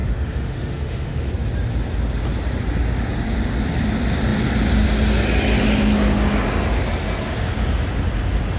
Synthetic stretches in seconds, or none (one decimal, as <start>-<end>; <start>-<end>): 0.0-1.3